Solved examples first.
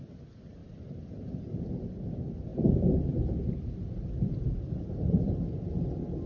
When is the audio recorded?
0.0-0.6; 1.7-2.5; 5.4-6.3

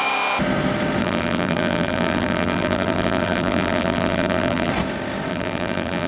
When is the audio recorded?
0.0-1.0; 4.7-5.3